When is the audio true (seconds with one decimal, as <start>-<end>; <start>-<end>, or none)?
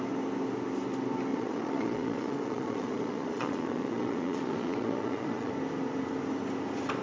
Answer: 0.0-1.3; 5.5-7.0